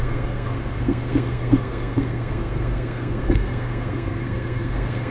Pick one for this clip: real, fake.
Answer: fake